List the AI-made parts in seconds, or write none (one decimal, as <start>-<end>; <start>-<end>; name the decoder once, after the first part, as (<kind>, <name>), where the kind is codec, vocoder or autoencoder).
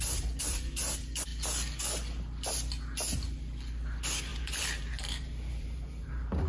4.3-6.5 (vocoder, BigVGAN v2)